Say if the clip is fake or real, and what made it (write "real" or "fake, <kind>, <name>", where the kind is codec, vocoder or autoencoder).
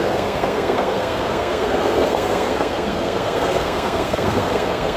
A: fake, codec, SNAC